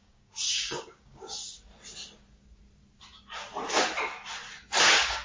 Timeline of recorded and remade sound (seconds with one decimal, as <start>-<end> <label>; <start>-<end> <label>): 0.0-1.7 remade; 1.7-4.8 recorded; 4.8-5.2 remade